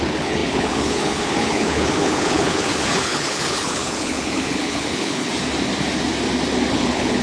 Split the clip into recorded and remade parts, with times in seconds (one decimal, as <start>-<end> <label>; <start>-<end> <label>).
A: 0.0-5.3 remade; 5.3-6.7 recorded; 6.7-7.2 remade